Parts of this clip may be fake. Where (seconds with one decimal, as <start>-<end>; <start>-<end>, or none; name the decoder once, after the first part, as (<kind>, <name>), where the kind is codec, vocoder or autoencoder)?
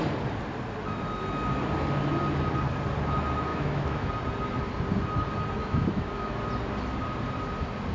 3.5-4.1 (autoencoder, DAC-VAE); 5.6-6.4